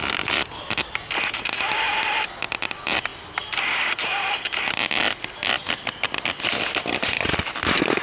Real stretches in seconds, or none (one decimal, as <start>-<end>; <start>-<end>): 0.0-8.0

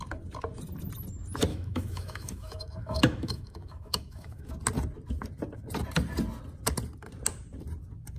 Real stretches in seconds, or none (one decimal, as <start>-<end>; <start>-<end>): 0.0-1.5; 4.5-8.2

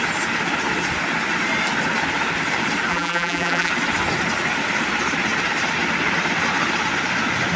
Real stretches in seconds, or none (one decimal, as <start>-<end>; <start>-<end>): 0.0-2.9; 3.7-7.6

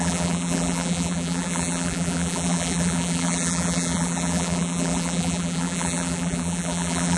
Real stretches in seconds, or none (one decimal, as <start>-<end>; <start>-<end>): none

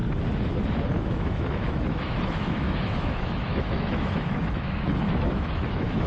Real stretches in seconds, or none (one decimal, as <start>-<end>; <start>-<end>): 0.0-0.9